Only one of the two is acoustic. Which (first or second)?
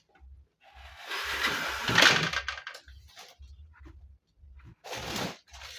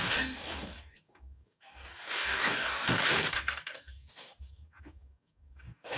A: first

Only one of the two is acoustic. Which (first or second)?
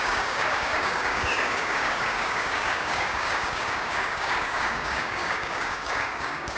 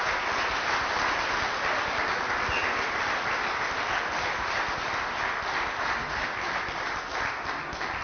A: second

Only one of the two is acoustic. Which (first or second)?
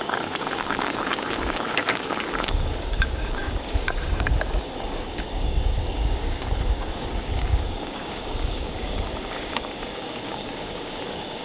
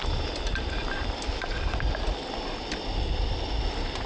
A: second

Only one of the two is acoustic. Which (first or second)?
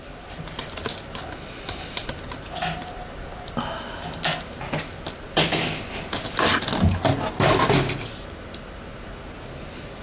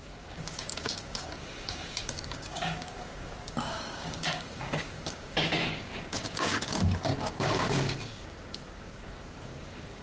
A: first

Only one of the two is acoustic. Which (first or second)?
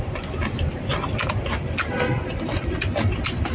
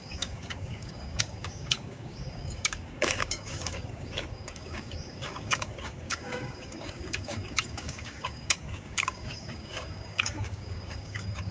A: first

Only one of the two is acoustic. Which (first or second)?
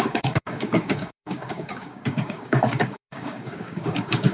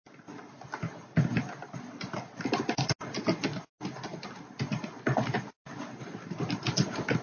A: second